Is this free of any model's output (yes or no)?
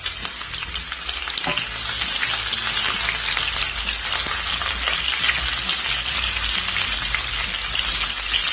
yes